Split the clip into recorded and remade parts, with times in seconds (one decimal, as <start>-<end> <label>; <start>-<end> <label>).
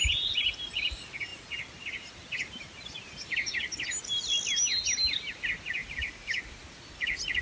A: 0.0-5.8 recorded; 5.8-6.4 remade; 6.4-7.4 recorded